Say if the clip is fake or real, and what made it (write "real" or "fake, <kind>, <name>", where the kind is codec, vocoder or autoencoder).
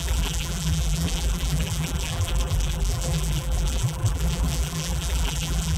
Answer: fake, vocoder, BigVGAN v2